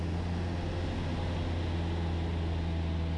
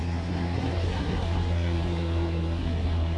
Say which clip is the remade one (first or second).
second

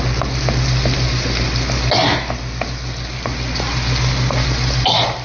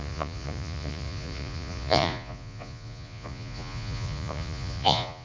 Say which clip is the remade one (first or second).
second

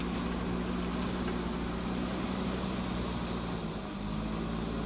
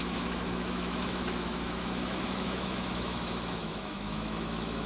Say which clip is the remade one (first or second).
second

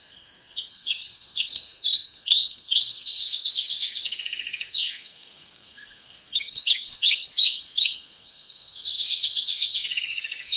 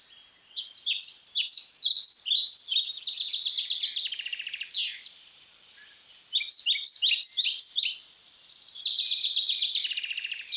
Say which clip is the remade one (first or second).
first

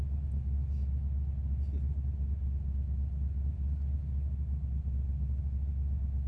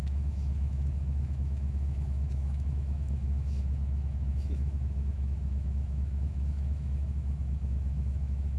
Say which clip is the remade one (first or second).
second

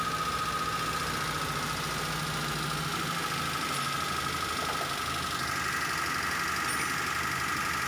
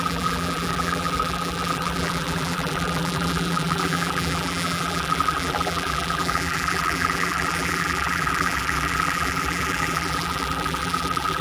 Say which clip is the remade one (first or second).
second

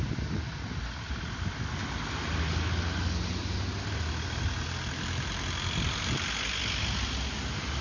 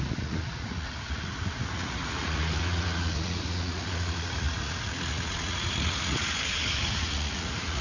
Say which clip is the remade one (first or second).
second